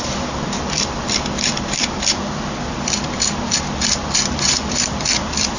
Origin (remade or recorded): remade